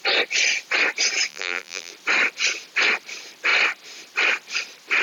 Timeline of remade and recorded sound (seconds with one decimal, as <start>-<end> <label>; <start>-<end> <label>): 0.0-1.3 recorded; 1.3-1.9 remade; 1.9-5.0 recorded